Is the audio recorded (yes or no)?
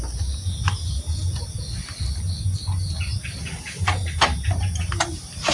yes